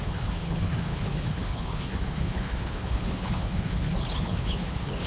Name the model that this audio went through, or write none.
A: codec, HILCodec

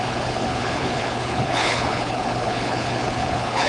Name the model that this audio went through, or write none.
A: codec, HILCodec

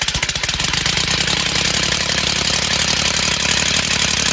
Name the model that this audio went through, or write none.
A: none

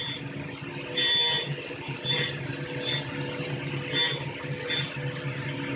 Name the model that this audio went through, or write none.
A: none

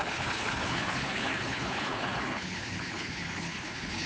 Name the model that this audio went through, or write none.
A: codec, HILCodec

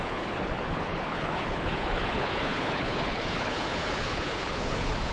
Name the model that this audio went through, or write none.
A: codec, HILCodec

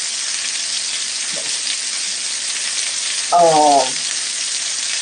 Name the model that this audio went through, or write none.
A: none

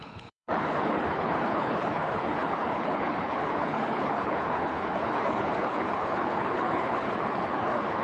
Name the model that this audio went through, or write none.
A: codec, HILCodec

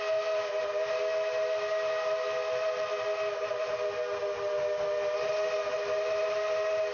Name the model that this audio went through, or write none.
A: none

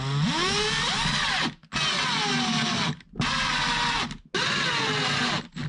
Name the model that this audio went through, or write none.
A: none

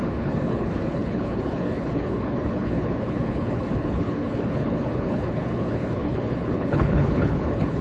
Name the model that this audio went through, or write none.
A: codec, HILCodec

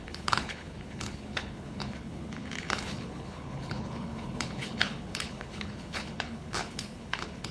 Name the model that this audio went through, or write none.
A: codec, HILCodec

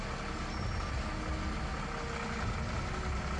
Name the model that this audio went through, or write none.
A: none